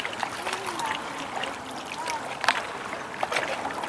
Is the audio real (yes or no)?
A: yes